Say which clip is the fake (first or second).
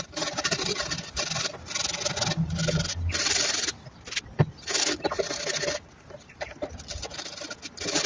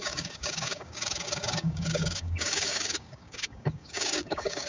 second